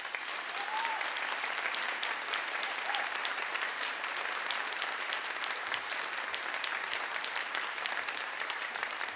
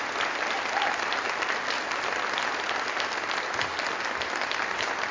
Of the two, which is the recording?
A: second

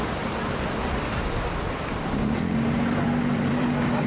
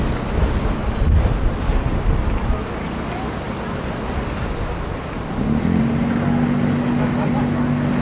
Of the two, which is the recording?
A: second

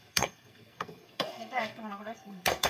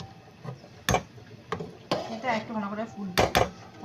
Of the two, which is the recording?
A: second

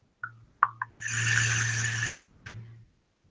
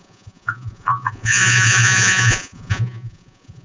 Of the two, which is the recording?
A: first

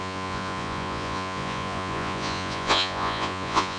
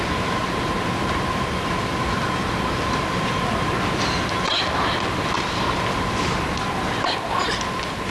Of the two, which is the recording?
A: second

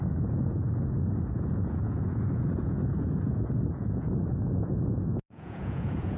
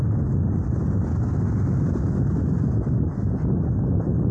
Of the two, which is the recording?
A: second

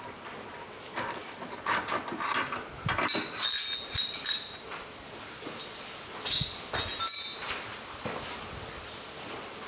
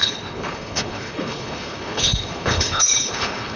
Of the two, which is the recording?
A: first